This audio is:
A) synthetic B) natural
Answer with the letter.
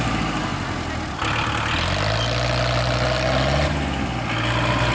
B